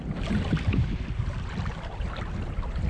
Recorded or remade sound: recorded